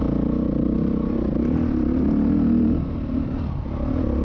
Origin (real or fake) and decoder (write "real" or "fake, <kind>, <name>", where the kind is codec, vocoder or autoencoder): real